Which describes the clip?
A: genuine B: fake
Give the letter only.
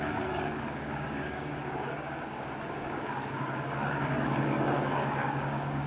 B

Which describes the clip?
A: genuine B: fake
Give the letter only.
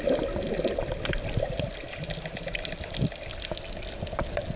A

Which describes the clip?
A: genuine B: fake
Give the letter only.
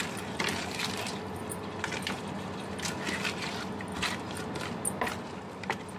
A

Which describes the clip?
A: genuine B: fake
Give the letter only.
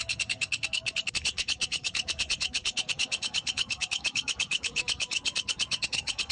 B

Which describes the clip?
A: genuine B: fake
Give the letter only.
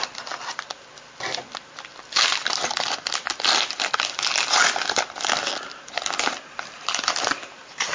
A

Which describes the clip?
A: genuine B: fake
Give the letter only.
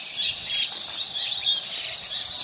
A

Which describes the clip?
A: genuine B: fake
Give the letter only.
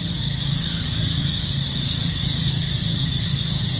B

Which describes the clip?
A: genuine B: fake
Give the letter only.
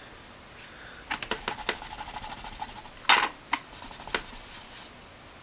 A